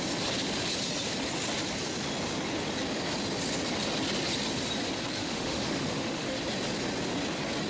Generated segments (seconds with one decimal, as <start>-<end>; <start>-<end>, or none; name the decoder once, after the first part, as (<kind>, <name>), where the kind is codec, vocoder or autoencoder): 5.2-6.4 (autoencoder, DAC-VAE)